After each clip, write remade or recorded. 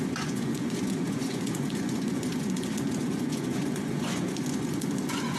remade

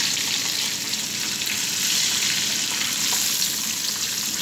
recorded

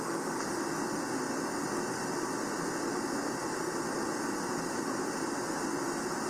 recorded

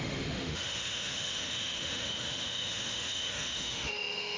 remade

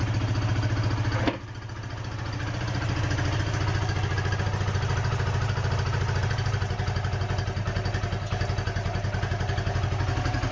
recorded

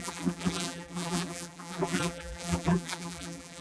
remade